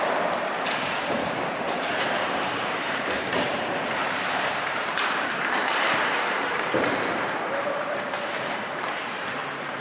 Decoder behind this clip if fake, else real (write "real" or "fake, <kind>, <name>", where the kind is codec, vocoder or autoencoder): fake, vocoder, BigVGAN v2